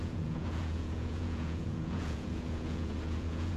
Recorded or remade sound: remade